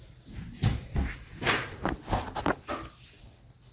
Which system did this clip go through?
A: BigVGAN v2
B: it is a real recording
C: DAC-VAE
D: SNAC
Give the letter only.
B